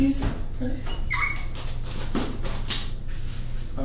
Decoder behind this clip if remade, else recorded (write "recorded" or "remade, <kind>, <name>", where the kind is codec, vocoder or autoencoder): recorded